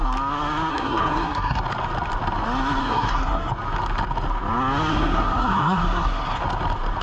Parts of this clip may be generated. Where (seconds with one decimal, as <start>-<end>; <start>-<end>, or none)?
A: 0.7-1.6; 2.8-3.5; 4.9-6.4